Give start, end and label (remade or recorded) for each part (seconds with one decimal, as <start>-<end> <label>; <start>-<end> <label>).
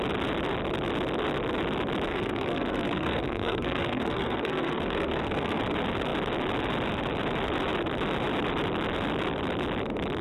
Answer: 0.0-2.1 recorded; 2.1-5.6 remade; 5.6-10.2 recorded